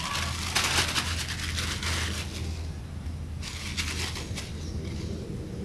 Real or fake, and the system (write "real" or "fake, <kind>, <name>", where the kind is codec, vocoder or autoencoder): real